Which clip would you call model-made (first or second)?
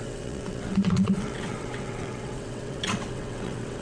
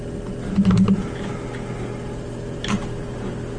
first